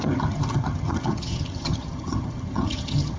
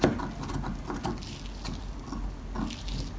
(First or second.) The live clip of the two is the second